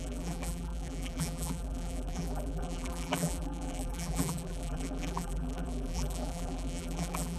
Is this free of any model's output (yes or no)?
no